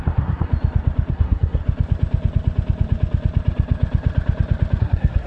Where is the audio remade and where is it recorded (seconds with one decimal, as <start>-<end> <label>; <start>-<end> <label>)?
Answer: 0.0-0.5 remade; 0.5-1.1 recorded; 1.1-1.6 remade; 1.6-4.8 recorded; 4.8-5.3 remade